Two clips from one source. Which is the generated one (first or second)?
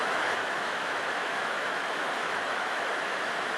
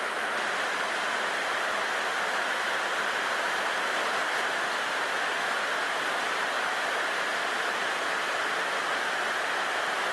first